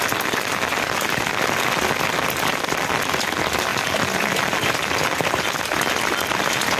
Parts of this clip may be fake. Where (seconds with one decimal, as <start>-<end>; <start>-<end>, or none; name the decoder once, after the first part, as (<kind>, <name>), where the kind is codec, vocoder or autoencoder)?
none